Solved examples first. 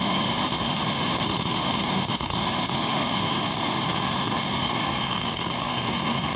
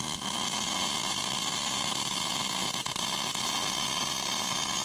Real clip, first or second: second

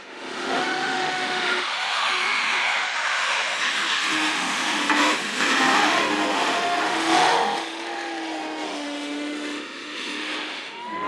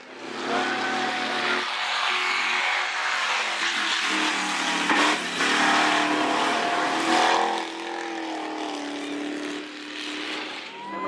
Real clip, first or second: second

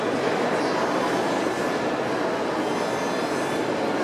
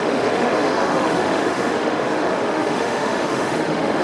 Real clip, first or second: first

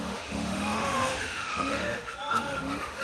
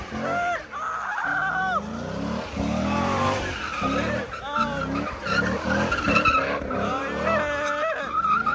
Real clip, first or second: second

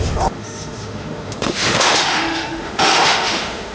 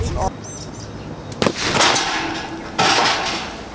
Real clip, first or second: second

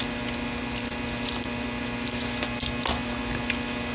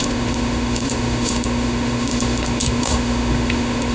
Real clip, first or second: first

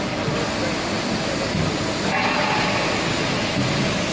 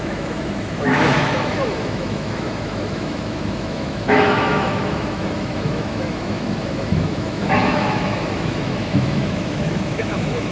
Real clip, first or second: first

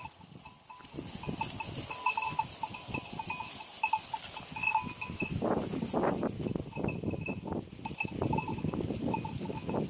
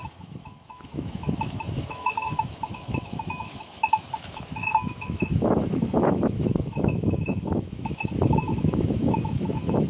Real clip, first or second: first